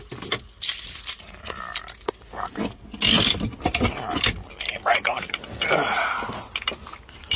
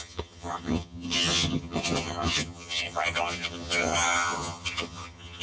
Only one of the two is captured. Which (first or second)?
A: first